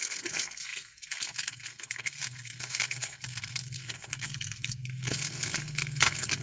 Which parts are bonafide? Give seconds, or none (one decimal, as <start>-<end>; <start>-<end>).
none